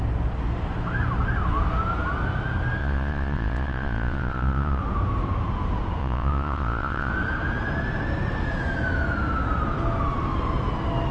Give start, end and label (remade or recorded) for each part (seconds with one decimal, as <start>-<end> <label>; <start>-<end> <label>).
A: 0.0-2.8 recorded; 2.8-4.8 remade; 4.8-6.0 recorded; 6.0-7.1 remade; 7.1-11.1 recorded